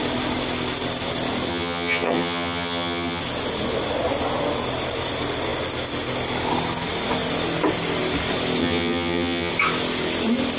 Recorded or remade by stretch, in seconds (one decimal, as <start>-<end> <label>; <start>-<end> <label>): 0.0-1.5 recorded; 1.5-3.2 remade; 3.2-8.6 recorded; 8.6-9.5 remade; 9.5-10.6 recorded